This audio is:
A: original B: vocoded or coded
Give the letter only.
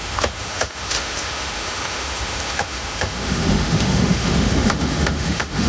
B